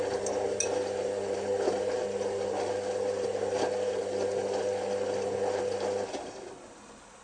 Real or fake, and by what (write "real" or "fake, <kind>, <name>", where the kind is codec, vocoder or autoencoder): real